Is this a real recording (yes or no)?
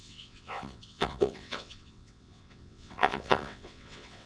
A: no